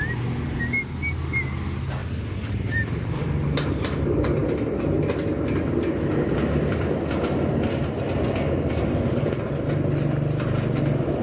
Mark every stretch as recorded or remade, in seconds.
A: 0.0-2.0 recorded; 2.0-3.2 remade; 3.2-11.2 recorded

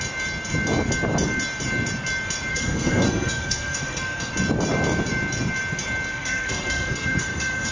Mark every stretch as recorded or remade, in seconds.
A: 0.0-2.5 recorded; 2.5-4.3 remade; 4.3-6.1 recorded; 6.1-7.7 remade